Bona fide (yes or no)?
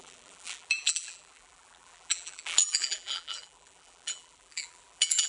no